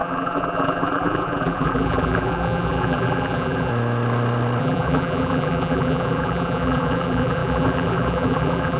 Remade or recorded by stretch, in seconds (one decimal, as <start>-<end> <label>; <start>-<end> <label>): 0.0-3.7 remade; 3.7-4.6 recorded; 4.6-8.8 remade